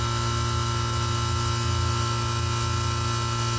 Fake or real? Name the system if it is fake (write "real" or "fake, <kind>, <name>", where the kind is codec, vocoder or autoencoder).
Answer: real